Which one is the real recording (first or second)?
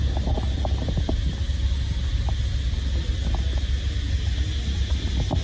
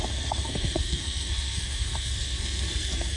first